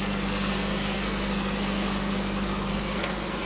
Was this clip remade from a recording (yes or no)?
yes